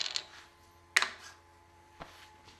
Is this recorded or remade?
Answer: recorded